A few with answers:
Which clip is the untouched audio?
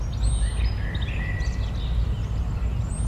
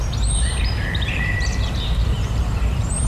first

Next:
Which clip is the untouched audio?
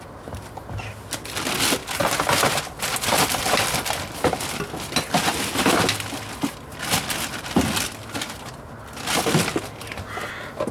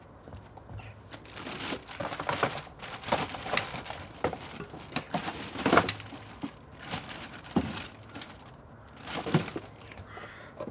first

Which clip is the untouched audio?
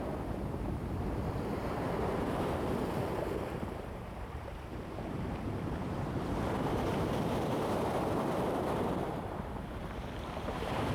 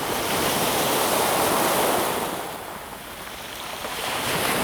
second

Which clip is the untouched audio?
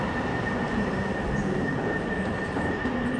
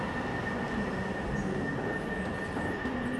second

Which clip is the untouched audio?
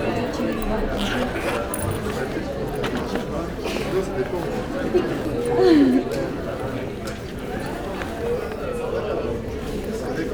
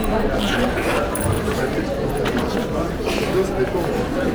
first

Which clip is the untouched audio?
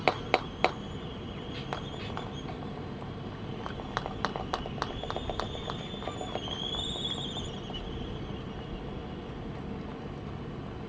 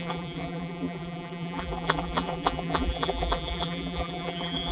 first